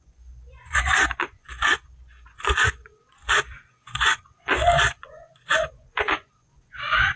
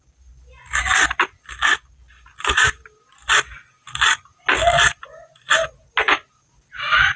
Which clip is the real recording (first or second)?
second